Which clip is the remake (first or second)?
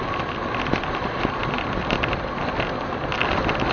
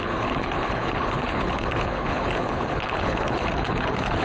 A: second